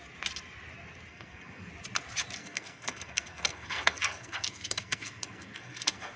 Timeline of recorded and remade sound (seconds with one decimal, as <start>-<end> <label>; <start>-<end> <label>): 0.0-1.1 recorded; 1.1-1.7 remade; 1.7-2.4 recorded; 2.4-6.2 remade